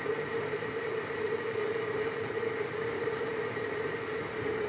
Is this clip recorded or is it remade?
remade